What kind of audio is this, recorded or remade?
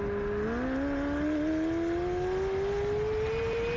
recorded